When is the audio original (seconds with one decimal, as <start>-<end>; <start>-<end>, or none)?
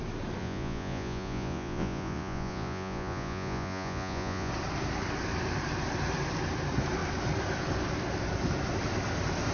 0.0-0.4; 4.5-9.5